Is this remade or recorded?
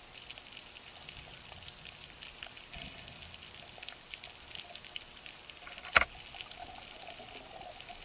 recorded